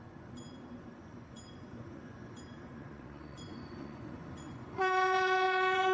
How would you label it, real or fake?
fake